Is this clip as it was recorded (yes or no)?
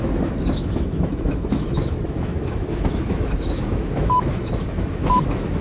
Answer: no